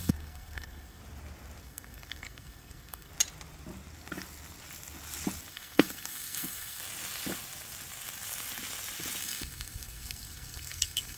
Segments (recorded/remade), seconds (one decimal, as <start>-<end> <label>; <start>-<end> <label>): 0.0-1.0 remade; 1.0-1.6 recorded; 1.6-3.1 remade; 3.1-5.5 recorded; 5.5-6.8 remade; 6.8-9.2 recorded; 9.2-11.2 remade